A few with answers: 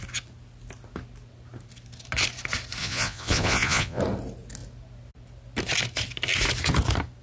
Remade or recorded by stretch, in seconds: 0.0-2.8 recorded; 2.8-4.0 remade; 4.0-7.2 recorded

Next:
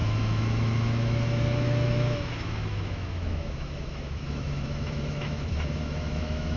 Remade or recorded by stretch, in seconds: 0.0-6.6 remade